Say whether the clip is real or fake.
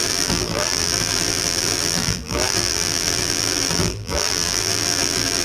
fake